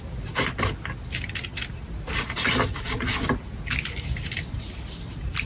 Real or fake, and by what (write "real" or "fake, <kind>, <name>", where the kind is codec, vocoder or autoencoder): real